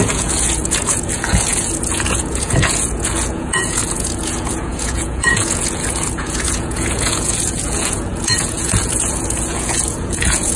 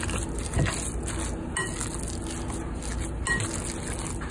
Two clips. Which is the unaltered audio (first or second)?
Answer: second